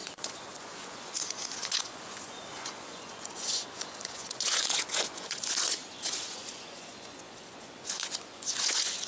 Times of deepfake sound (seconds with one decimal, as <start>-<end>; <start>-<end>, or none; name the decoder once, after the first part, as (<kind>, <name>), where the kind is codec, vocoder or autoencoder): 0.0-9.1 (vocoder, Vocos)